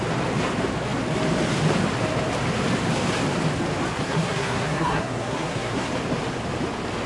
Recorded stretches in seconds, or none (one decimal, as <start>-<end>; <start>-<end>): 0.0-3.9; 5.9-7.1